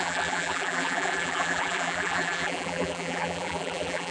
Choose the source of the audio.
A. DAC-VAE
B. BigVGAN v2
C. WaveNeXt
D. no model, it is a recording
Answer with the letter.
B